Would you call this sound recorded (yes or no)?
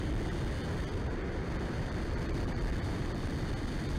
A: no